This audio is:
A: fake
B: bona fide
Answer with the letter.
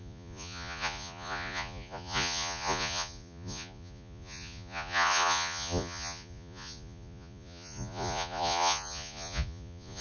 A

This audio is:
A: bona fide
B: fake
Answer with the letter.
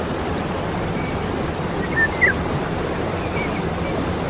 A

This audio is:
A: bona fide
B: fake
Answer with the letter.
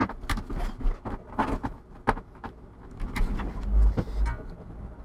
A